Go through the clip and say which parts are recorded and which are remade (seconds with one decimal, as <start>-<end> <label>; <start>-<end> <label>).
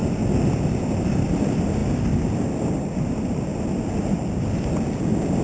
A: 0.0-5.4 recorded